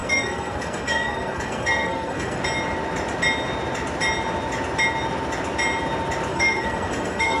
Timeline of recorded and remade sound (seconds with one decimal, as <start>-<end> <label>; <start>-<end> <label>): 0.0-2.4 remade; 2.4-6.3 recorded; 6.3-7.4 remade